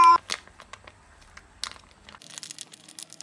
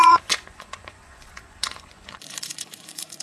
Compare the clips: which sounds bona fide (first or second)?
first